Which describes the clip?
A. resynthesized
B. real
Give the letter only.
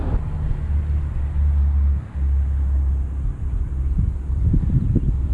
B